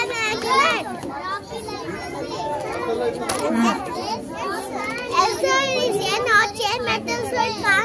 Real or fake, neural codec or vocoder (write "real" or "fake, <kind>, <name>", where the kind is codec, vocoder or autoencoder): real